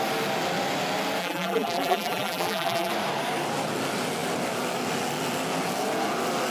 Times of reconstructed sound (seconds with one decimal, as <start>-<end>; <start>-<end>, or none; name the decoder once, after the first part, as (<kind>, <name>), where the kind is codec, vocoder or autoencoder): 1.2-2.9 (vocoder, BigVGAN v2)